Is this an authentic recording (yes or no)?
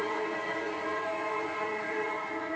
no